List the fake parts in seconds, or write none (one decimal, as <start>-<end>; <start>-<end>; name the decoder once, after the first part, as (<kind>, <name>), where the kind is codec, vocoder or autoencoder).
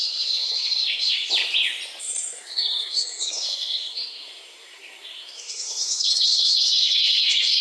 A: 0.0-1.3 (codec, SNAC); 2.0-7.6